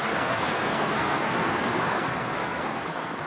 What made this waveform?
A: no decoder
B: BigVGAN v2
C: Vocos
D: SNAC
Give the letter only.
D